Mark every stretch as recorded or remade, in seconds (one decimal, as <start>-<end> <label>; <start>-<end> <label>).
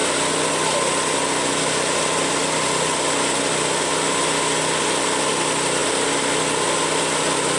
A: 0.0-7.6 recorded